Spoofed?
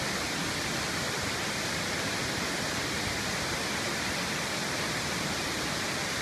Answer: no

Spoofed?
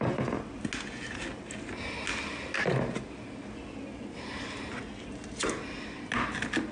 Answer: no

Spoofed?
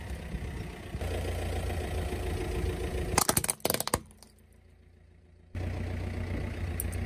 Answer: no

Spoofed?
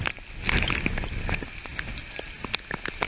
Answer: no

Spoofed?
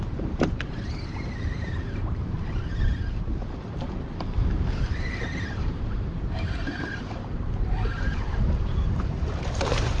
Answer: yes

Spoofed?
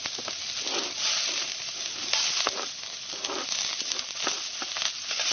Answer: no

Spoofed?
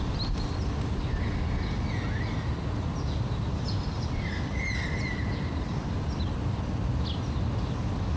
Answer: no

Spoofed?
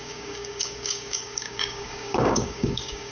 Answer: yes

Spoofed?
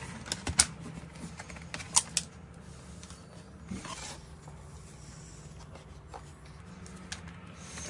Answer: no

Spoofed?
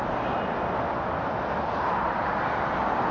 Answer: no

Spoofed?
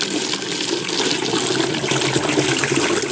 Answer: no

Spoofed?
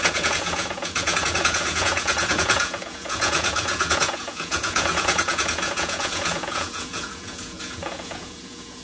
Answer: yes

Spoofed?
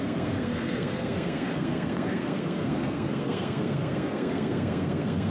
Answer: yes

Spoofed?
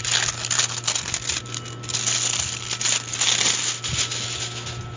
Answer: no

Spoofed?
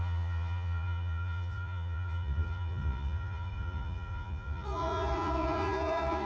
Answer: yes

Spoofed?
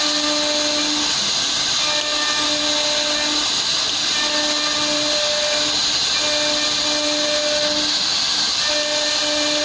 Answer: no